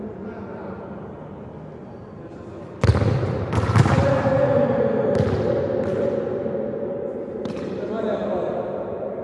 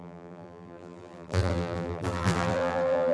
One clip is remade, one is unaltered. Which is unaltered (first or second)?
first